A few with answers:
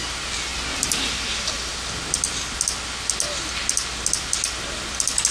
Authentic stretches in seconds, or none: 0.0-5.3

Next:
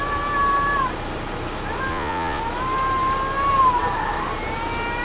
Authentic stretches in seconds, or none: 0.0-1.9; 2.4-5.0

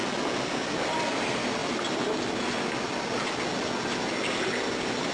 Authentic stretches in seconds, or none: 0.0-5.1

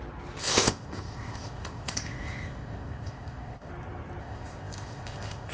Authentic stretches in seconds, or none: 0.0-0.4; 3.7-4.2

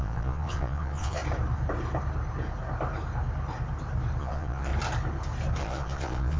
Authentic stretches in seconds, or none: 1.2-4.2; 4.7-5.6

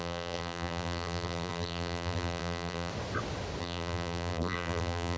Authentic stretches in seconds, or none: 2.9-3.6